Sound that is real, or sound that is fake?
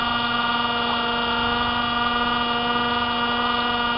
real